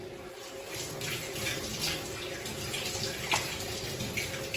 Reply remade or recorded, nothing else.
recorded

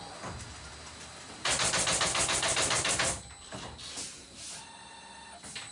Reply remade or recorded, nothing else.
recorded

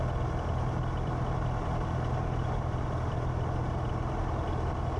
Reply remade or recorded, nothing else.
recorded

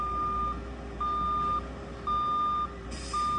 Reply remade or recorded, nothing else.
recorded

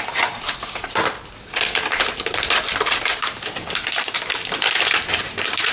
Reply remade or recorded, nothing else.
remade